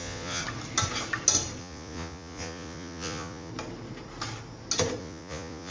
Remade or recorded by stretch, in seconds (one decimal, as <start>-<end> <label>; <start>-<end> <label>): 0.0-0.4 remade; 0.4-1.6 recorded; 1.6-3.5 remade; 3.5-5.0 recorded; 5.0-5.7 remade